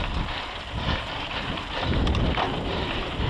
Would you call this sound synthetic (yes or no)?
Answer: no